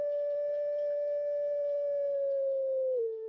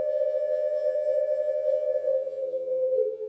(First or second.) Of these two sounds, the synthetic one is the second